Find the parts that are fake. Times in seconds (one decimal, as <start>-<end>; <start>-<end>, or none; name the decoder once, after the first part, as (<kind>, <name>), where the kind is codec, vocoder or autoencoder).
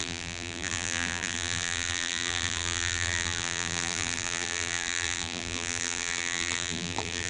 0.0-7.3 (vocoder, BigVGAN v2)